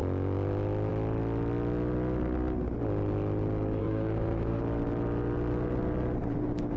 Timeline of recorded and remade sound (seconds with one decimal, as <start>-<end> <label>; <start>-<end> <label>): 0.0-3.8 recorded; 3.8-4.6 remade; 4.6-6.8 recorded